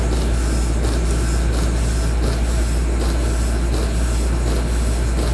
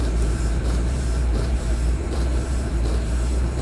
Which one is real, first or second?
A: first